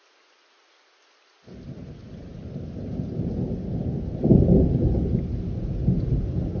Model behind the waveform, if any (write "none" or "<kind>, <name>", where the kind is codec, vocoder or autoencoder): none